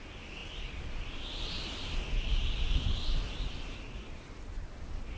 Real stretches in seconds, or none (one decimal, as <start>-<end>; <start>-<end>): 0.0-5.2